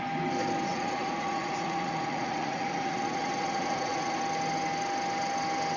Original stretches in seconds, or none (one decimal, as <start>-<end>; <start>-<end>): 0.0-0.7; 4.2-5.8